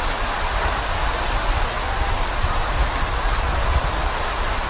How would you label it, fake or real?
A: real